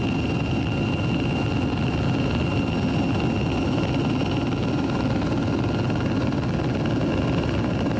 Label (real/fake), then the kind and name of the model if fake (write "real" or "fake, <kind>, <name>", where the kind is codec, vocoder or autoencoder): real